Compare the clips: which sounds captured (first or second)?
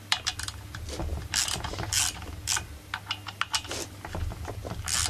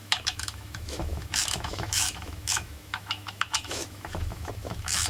first